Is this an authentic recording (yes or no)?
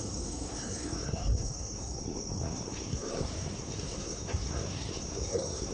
no